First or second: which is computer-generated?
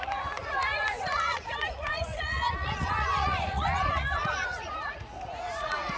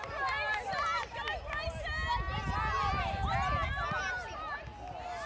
first